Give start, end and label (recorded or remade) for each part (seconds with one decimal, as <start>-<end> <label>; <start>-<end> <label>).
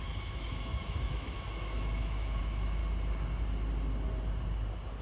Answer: 0.0-2.8 remade; 2.8-5.0 recorded